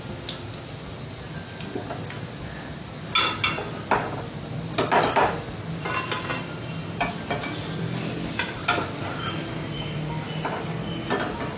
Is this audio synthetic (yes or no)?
no